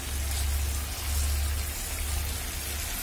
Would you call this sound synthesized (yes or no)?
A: no